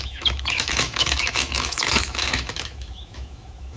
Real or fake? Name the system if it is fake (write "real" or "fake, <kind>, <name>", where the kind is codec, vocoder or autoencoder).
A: fake, autoencoder, DAC-VAE